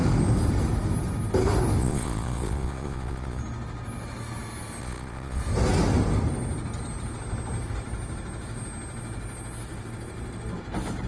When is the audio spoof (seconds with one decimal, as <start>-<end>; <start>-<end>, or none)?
1.8-3.4; 4.8-5.4